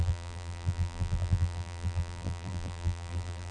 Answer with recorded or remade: remade